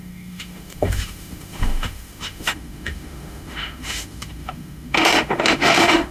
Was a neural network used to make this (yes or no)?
yes